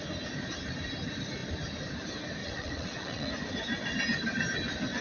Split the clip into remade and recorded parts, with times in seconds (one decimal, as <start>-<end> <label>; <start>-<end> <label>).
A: 0.0-2.4 recorded; 2.4-3.3 remade; 3.3-5.0 recorded